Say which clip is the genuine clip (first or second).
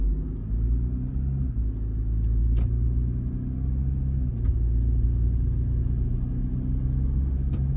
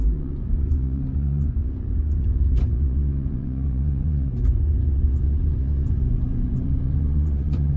first